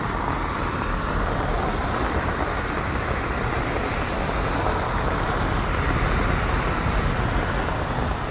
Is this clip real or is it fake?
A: real